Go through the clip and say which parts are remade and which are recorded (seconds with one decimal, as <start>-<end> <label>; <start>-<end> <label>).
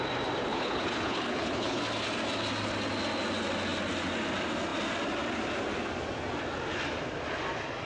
0.0-0.5 recorded; 0.5-1.8 remade; 1.8-7.9 recorded